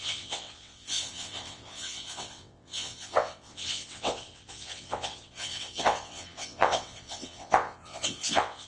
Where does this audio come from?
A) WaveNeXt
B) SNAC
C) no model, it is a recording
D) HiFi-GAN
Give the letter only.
A